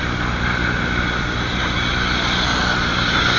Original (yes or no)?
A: yes